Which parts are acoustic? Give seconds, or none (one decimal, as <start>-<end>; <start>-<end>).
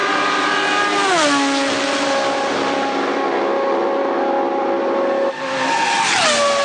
0.0-6.6